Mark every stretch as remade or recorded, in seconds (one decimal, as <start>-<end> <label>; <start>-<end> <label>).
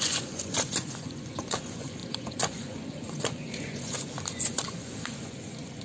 0.0-5.8 remade